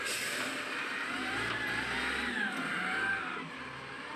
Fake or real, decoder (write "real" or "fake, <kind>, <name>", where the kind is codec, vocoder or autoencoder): real